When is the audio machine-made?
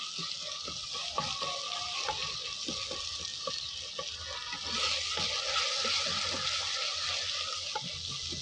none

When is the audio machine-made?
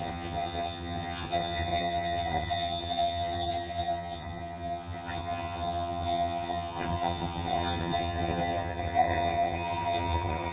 0.0-10.5 (vocoder, HiFi-GAN)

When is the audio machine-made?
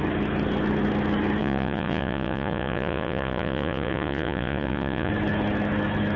1.4-5.1 (vocoder, Vocos)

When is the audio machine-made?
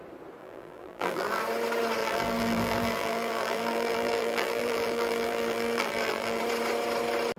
0.4-1.4 (vocoder, BigVGAN v2); 2.0-6.4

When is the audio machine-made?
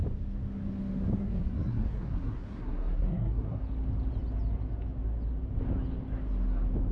1.2-3.6 (codec, SNAC)